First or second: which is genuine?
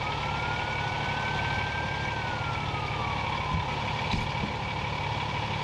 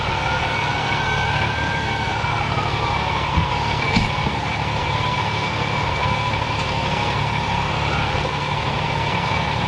first